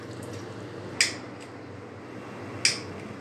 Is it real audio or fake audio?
real